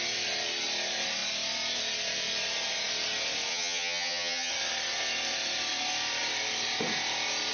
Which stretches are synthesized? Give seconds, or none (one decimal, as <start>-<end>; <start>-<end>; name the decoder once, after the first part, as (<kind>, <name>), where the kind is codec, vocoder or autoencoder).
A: 3.5-4.5 (vocoder, HiFi-GAN)